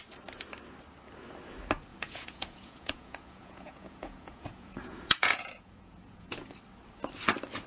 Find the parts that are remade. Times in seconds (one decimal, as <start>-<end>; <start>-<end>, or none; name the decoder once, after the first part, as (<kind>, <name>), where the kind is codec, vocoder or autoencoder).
1.9-6.5 (vocoder, Vocos)